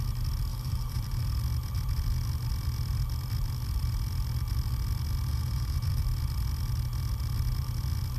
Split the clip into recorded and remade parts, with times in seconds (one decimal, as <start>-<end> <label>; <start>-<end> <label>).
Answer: 0.0-0.5 recorded; 0.5-1.2 remade; 1.2-5.3 recorded; 5.3-6.0 remade; 6.0-8.2 recorded